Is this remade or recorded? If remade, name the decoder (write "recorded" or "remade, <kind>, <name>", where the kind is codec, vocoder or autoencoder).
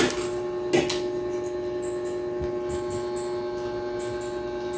recorded